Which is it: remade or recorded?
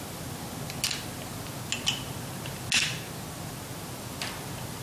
recorded